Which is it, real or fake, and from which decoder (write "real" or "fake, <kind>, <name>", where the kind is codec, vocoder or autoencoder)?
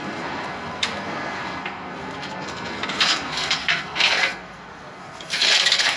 fake, codec, SNAC